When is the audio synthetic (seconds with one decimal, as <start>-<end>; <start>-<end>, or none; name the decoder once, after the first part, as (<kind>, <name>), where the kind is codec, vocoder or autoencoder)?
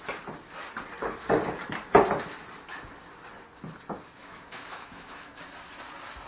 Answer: 4.2-5.4 (autoencoder, DAC-VAE)